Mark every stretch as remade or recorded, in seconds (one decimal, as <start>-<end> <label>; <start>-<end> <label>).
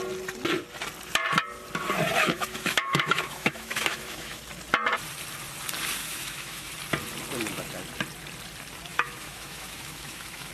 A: 0.0-2.2 recorded; 2.2-4.4 remade; 4.4-6.0 recorded; 6.0-6.7 remade; 6.7-8.9 recorded; 8.9-10.5 remade